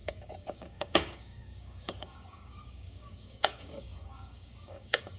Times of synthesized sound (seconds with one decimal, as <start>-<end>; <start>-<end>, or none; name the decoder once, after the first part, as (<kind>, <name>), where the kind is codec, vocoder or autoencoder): 0.0-5.2 (codec, DAC)